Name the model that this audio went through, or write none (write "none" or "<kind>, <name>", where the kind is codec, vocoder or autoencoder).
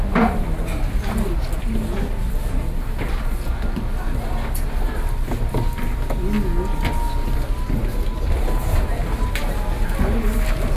none